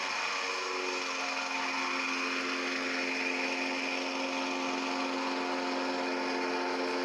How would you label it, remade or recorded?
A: recorded